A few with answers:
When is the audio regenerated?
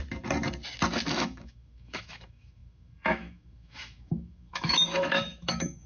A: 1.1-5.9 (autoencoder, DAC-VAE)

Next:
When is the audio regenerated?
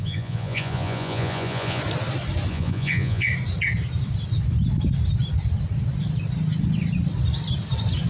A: 0.0-1.8 (vocoder, Vocos); 2.5-3.3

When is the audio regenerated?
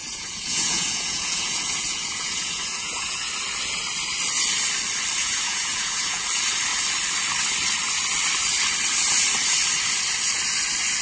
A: 0.0-3.3 (vocoder, Vocos); 5.2-6.2